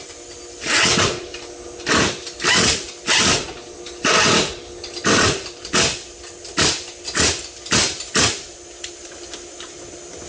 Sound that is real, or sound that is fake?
real